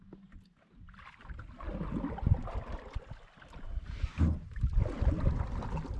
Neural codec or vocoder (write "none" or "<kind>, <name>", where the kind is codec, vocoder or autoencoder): none